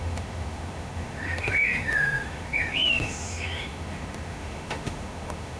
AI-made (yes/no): yes